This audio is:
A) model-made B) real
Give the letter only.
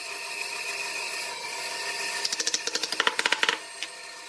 B